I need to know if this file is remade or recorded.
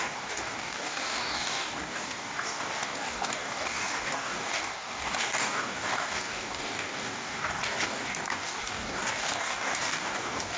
remade